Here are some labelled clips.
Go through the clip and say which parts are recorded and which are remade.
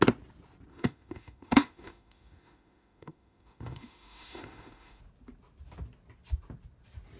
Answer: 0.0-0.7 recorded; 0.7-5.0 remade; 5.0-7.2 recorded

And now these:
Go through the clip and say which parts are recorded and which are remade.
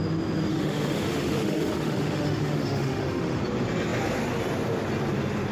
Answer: 0.0-0.5 recorded; 0.5-3.4 remade; 3.4-5.5 recorded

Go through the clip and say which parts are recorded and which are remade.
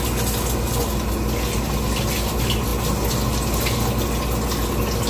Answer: 0.0-5.1 recorded